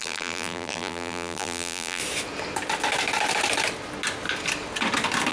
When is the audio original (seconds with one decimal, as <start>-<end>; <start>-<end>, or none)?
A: 2.0-5.3